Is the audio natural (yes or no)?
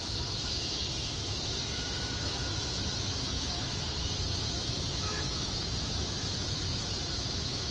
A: no